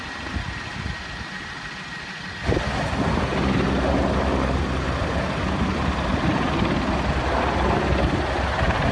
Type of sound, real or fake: real